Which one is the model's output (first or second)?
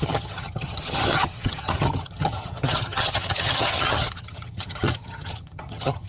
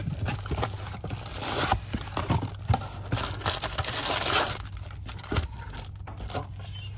first